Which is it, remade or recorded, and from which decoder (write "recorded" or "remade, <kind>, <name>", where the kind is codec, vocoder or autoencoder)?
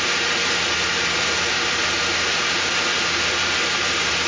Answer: remade, vocoder, BigVGAN v2